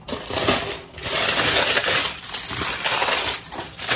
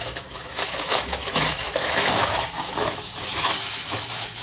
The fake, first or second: second